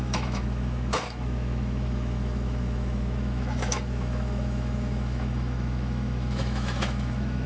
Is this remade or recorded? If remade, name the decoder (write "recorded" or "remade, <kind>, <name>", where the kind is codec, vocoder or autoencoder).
remade, autoencoder, DAC-VAE